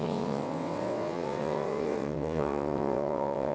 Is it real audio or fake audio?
fake